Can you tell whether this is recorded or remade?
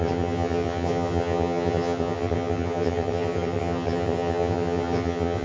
remade